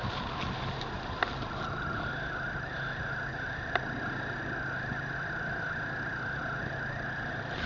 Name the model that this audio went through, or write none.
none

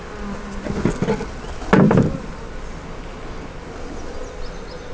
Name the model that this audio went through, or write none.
none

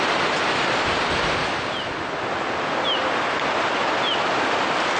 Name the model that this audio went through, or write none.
none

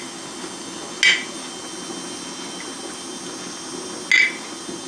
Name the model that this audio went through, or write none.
none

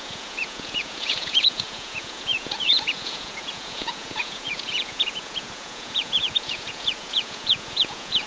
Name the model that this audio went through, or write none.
vocoder, Vocos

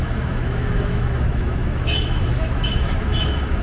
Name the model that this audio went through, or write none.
autoencoder, DAC-VAE